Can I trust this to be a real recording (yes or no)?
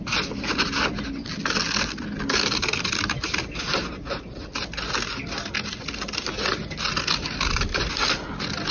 yes